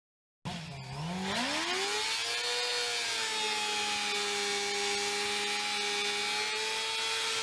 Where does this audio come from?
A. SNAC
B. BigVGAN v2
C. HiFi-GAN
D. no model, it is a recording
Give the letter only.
D